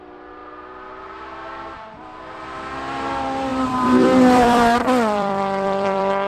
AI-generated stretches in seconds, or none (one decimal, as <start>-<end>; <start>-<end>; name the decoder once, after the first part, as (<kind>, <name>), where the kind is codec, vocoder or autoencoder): 3.5-6.3 (vocoder, BigVGAN v2)